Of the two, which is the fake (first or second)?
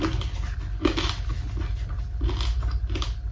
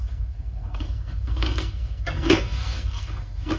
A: second